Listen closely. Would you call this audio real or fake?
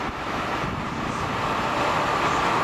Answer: real